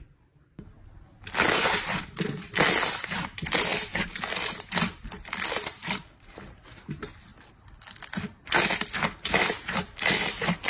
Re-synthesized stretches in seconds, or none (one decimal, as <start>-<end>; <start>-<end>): none